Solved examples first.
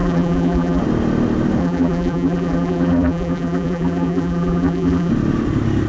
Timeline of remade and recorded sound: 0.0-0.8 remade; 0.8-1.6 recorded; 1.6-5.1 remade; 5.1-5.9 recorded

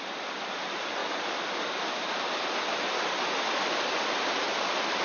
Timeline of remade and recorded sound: 0.0-1.0 remade; 1.0-4.0 recorded; 4.0-5.0 remade

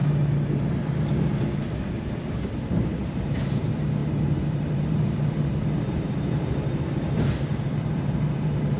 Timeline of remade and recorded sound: 0.0-2.3 recorded; 2.3-8.8 remade

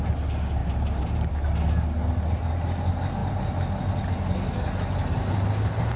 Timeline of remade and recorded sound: 0.0-0.6 recorded; 0.6-1.3 remade; 1.3-6.0 recorded

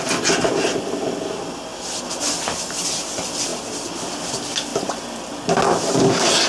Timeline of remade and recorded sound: 0.0-4.7 recorded; 4.7-5.4 remade; 5.4-6.5 recorded

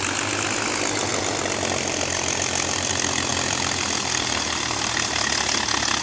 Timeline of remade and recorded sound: 0.0-1.1 recorded; 1.1-2.9 remade; 2.9-3.3 recorded; 3.3-4.9 remade; 4.9-6.0 recorded